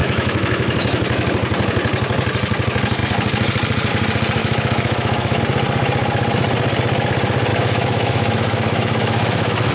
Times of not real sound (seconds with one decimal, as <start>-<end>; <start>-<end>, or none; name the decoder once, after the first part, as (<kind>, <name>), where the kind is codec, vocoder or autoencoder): 0.0-1.3 (autoencoder, DAC-VAE); 4.4-5.4; 7.5-9.7

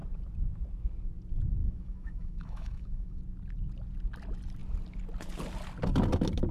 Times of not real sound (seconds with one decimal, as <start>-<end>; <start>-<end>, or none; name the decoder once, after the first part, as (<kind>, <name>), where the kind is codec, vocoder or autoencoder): 1.6-3.2 (autoencoder, DAC-VAE)

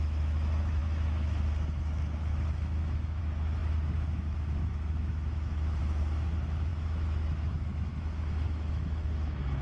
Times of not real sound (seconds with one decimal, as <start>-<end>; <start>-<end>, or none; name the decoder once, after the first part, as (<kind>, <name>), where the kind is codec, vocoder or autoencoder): 0.0-9.6 (autoencoder, DAC-VAE)

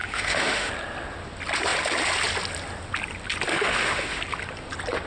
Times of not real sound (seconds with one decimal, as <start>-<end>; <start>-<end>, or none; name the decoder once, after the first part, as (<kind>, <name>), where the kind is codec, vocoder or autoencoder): 0.0-0.7 (autoencoder, DAC-VAE); 3.5-4.2